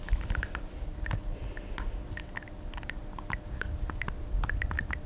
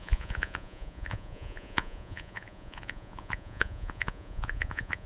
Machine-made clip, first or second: second